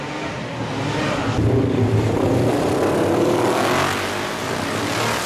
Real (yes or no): yes